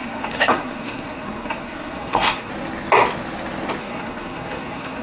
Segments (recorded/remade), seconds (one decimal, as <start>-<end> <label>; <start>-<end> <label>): 0.0-2.5 remade; 2.5-3.8 recorded; 3.8-5.0 remade

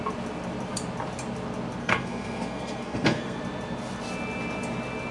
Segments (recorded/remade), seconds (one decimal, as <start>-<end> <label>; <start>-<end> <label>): 0.0-1.8 recorded; 1.8-3.4 remade; 3.4-5.1 recorded

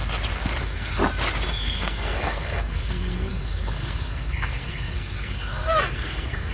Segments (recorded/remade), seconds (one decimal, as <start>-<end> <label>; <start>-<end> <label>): 0.0-0.6 recorded; 0.6-1.0 remade; 1.0-1.5 recorded; 1.5-6.5 remade

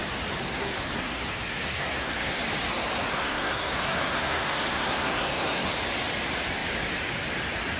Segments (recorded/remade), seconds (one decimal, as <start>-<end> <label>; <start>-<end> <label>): 0.0-0.4 recorded; 0.4-2.4 remade; 2.4-3.1 recorded; 3.1-5.7 remade; 5.7-7.8 recorded

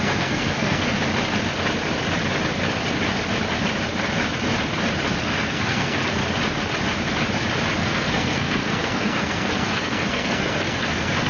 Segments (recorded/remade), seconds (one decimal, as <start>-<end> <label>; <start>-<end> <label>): 0.0-1.0 remade; 1.0-5.2 recorded; 5.2-6.2 remade; 6.2-7.8 recorded; 7.8-11.3 remade

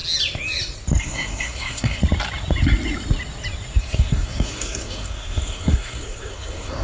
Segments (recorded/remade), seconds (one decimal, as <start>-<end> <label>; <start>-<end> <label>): 0.0-1.0 recorded; 1.0-2.0 remade; 2.0-3.8 recorded; 3.8-6.8 remade

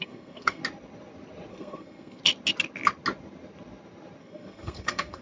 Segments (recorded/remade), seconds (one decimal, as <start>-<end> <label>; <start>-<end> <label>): 0.0-0.6 remade; 0.6-1.5 recorded; 1.5-2.2 remade; 2.2-4.2 recorded; 4.2-5.2 remade